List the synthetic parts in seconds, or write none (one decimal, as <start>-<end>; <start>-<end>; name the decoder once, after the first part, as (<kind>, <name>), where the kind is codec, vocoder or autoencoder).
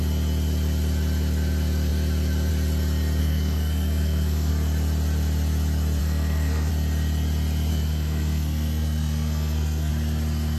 3.2-4.5 (codec, SNAC); 6.0-6.7; 7.7-9.9